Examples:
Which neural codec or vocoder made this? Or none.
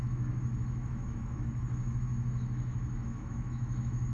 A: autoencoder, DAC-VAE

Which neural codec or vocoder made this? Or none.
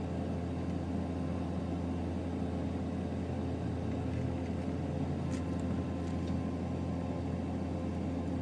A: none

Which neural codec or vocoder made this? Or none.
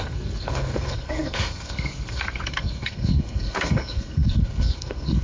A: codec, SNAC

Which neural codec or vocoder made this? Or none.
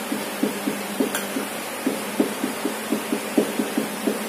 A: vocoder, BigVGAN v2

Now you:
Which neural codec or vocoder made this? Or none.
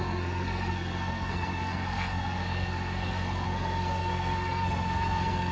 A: codec, SNAC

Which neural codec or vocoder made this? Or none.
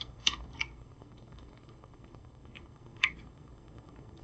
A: codec, SNAC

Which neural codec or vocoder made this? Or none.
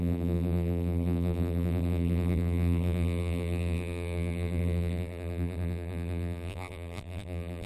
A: vocoder, BigVGAN v2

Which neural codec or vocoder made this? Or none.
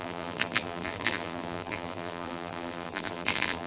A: vocoder, BigVGAN v2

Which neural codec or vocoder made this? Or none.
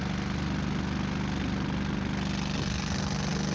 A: none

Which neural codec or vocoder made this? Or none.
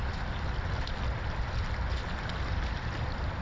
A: none